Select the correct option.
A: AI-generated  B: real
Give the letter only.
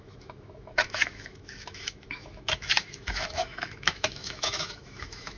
A